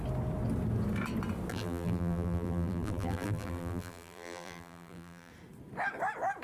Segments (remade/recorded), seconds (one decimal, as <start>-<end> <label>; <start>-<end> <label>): 0.0-1.5 recorded; 1.5-5.3 remade; 5.3-6.4 recorded